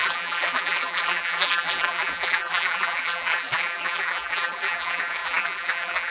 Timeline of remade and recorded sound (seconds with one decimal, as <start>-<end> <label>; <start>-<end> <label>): 0.0-6.1 remade